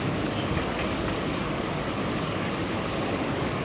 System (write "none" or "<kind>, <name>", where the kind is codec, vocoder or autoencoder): codec, DAC